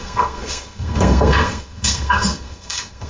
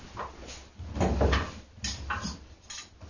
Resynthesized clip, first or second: first